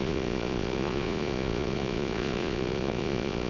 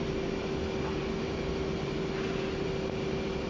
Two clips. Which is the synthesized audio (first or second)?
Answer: first